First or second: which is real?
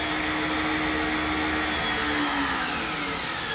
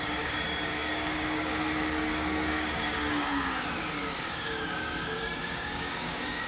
first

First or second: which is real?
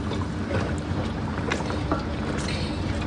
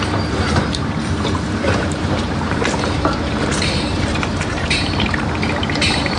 first